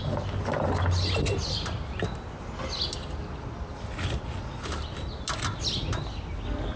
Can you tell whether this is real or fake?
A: real